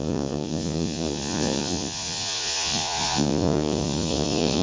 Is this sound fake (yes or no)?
yes